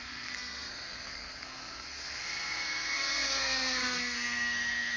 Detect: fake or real fake